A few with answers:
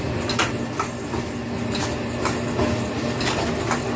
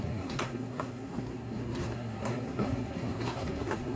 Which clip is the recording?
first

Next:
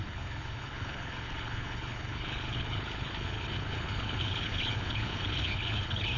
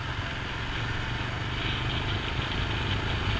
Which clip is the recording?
second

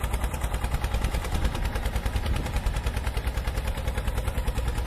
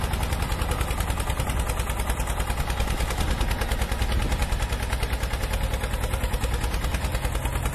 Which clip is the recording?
second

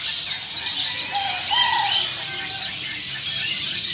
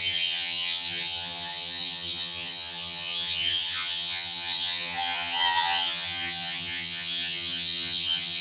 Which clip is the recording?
first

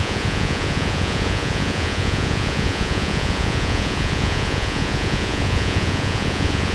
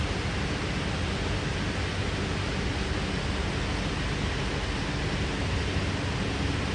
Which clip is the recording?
second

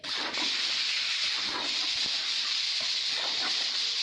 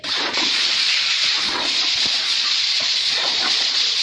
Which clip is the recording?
first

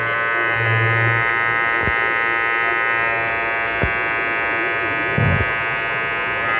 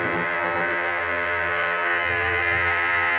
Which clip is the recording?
first